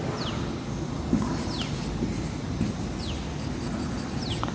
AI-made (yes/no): no